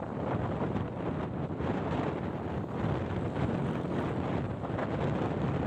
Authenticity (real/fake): real